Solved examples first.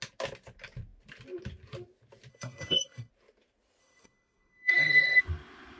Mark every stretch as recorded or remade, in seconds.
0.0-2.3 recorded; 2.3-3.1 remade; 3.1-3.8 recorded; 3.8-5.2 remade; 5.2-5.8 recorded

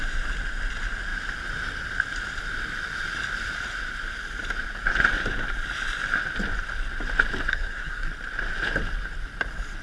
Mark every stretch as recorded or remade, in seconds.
0.0-7.5 recorded; 7.5-8.1 remade; 8.1-9.8 recorded